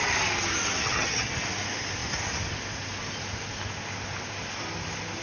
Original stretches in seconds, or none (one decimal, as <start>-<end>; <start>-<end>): 0.0-0.8; 1.3-5.2